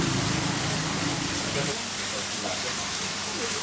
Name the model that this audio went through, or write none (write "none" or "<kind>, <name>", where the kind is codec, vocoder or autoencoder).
none